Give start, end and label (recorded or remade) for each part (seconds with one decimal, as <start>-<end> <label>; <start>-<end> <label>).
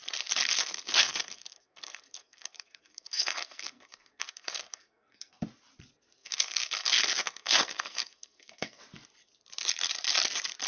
0.0-0.5 recorded; 0.5-5.4 remade; 5.4-6.2 recorded; 6.2-8.8 remade; 8.8-10.7 recorded